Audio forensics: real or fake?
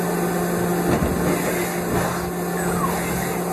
real